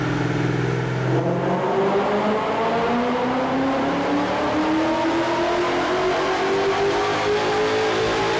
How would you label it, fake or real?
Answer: real